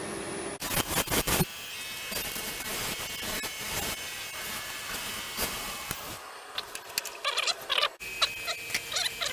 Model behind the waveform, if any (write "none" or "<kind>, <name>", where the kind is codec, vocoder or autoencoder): none